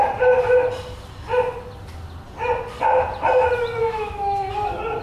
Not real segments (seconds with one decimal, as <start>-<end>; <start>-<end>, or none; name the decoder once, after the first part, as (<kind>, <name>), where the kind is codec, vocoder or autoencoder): 3.8-4.5 (autoencoder, DAC-VAE)